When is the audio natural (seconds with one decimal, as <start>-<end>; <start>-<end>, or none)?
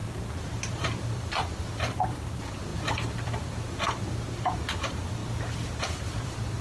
0.0-0.7; 5.2-5.8